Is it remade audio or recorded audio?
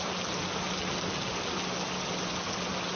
recorded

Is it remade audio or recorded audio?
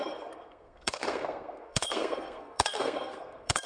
remade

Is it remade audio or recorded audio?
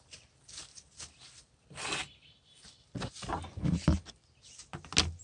recorded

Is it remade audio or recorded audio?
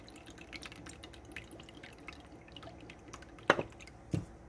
recorded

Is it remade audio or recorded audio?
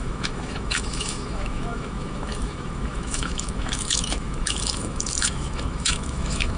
remade